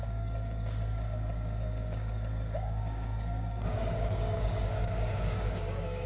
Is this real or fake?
fake